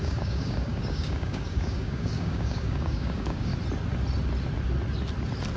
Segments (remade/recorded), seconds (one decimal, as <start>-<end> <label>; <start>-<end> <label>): 0.0-3.5 remade; 3.5-5.6 recorded